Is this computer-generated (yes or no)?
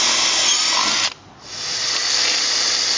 no